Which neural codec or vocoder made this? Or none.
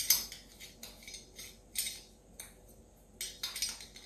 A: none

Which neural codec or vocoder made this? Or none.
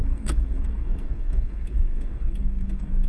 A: codec, SNAC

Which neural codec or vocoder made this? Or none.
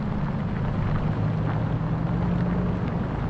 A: none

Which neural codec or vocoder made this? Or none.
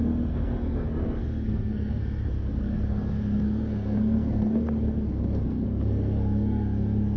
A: codec, SNAC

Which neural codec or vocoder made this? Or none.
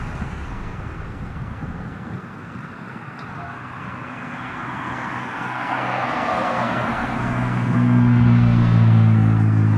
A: codec, SNAC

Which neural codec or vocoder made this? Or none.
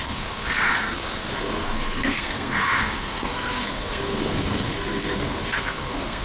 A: codec, SNAC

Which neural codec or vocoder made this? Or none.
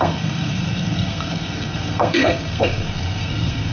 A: codec, SNAC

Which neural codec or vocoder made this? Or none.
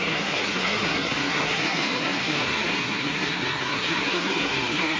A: codec, SNAC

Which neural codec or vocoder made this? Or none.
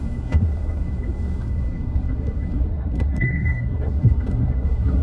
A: codec, SNAC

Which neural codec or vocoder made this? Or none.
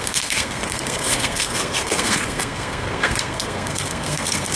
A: codec, SNAC